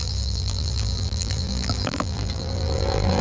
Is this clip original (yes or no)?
no